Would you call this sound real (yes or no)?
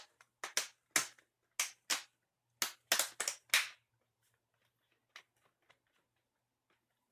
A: yes